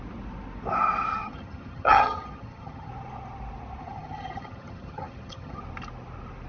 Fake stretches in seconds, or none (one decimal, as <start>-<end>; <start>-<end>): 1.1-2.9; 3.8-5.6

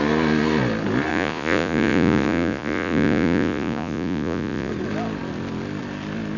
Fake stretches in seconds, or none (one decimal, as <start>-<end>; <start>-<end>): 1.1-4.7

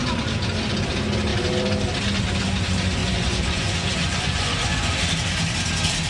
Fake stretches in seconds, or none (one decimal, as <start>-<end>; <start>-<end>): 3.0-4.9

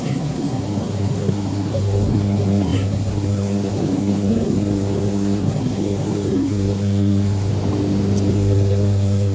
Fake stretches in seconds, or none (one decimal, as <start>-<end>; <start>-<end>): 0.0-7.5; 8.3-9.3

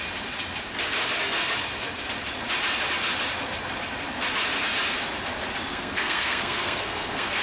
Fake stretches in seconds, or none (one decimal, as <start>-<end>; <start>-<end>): 5.7-7.4

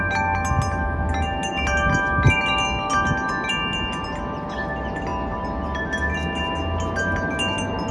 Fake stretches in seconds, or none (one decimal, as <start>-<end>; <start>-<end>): none

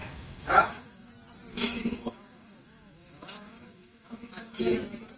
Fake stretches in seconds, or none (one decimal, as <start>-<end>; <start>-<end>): 0.0-1.1; 1.5-4.6